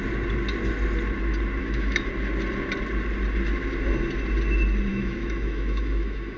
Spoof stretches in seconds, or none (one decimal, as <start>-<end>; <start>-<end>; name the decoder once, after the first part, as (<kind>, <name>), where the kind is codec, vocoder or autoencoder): 1.6-2.1 (autoencoder, DAC-VAE); 4.9-6.4